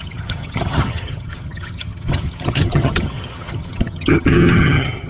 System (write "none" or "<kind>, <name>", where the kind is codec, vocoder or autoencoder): vocoder, HiFi-GAN